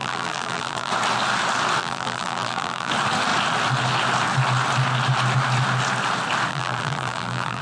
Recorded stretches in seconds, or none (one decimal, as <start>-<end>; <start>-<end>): 0.9-1.8; 2.9-6.5